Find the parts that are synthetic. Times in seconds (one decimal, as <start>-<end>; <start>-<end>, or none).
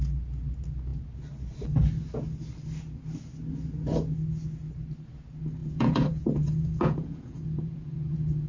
5.6-8.5